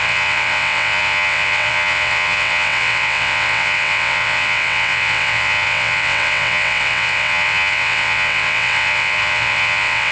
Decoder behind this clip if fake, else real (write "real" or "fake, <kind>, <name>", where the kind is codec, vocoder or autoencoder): fake, vocoder, WaveNeXt